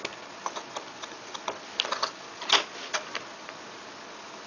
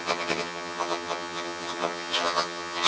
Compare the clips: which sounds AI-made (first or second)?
second